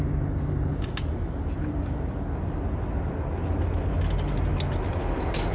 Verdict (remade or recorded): recorded